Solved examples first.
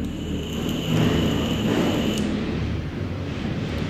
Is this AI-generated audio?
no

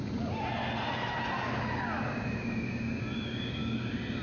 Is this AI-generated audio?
no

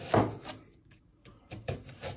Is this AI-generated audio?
no